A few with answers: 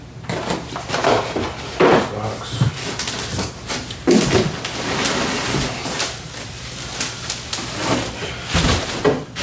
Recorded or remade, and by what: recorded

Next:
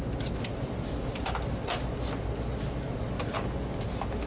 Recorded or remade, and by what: recorded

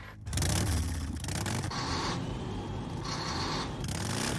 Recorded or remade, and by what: recorded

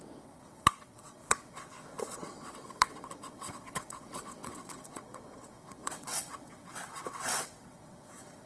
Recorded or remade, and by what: remade, vocoder, WaveNeXt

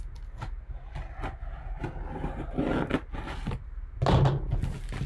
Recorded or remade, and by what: recorded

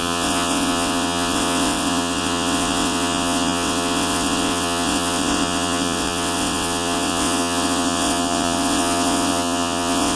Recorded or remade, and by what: remade, vocoder, WaveNeXt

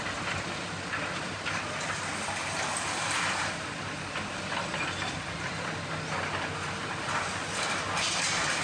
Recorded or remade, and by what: recorded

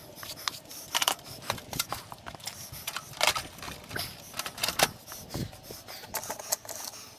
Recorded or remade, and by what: recorded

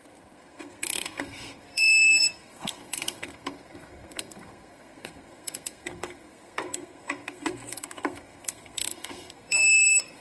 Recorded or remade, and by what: remade, codec, SNAC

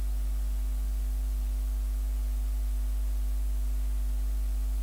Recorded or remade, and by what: recorded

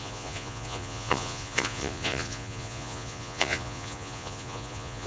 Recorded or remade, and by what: remade, vocoder, Vocos